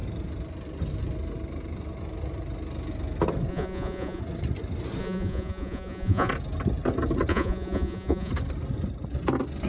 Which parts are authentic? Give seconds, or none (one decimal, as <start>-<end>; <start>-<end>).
0.0-3.5; 4.2-5.0; 6.3-7.3; 8.3-9.7